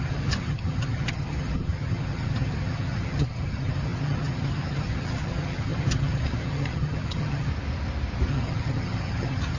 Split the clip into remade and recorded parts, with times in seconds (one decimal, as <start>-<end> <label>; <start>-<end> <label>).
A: 0.0-7.5 remade; 7.5-8.3 recorded; 8.3-9.6 remade